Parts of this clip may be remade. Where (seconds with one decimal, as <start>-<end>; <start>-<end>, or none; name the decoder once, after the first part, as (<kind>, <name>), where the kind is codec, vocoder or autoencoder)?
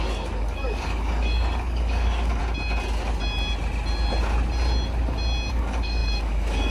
0.0-2.4 (codec, DAC); 5.5-6.7